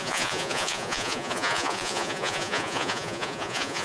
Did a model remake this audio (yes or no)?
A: yes